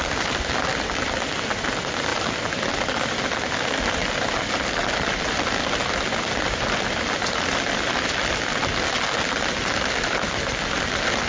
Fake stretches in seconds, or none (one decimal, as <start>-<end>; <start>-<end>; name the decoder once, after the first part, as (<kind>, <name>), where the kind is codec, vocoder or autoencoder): none